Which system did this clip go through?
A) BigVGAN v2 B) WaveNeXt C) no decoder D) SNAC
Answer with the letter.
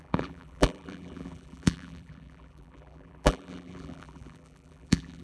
A